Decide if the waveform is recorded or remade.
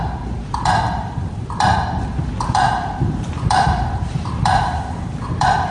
remade